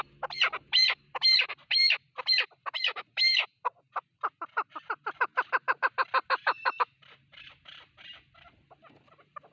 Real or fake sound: fake